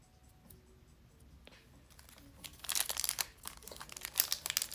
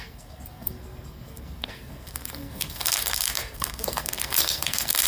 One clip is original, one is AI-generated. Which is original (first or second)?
first